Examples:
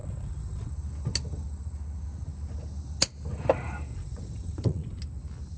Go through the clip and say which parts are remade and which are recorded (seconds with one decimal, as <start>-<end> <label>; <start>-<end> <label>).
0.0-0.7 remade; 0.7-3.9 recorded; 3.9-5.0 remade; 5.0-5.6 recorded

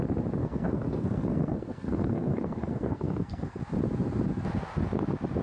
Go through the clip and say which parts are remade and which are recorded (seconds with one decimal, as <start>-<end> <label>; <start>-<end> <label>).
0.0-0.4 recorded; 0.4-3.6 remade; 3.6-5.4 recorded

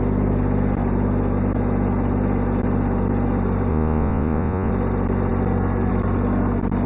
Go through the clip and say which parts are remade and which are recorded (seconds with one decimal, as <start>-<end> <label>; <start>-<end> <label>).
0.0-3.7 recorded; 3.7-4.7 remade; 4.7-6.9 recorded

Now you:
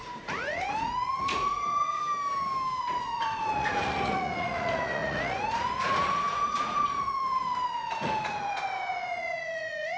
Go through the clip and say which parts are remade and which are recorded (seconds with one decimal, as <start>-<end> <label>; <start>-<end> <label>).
0.0-2.0 remade; 2.0-2.8 recorded; 2.8-10.0 remade

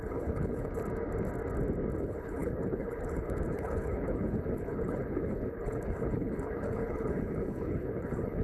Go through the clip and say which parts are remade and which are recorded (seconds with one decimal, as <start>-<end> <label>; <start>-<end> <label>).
0.0-0.7 remade; 0.7-2.0 recorded; 2.0-8.4 remade